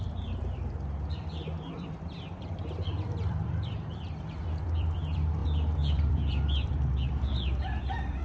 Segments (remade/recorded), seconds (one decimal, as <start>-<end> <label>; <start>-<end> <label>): 0.0-8.2 remade